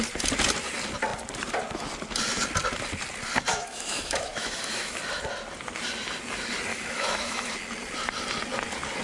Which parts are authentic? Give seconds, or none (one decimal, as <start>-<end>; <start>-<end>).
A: 0.0-3.5; 5.0-6.7; 7.5-9.0

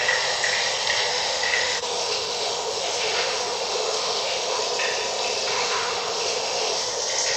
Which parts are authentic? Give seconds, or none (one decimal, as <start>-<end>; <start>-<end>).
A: 0.0-1.1; 4.6-5.5; 7.0-7.4

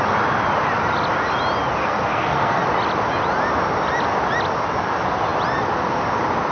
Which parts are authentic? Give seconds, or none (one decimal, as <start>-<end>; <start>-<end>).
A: 0.0-1.8; 2.6-6.5

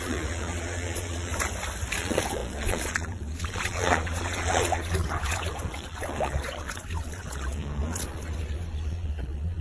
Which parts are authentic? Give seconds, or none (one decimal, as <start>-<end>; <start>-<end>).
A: 1.3-2.0